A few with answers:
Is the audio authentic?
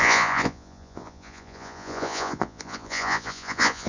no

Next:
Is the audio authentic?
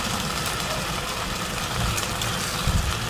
yes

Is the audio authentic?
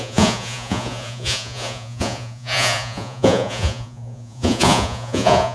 no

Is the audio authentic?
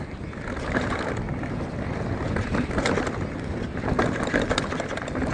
yes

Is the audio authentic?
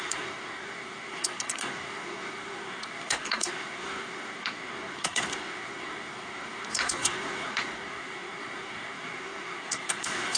no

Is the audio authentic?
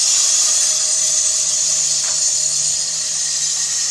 no